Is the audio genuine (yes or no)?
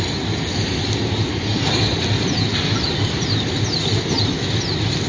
yes